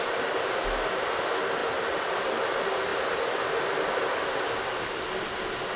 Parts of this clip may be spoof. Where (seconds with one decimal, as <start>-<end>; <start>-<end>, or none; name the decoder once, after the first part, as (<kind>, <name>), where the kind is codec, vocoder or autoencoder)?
1.6-2.3 (vocoder, BigVGAN v2); 2.9-3.7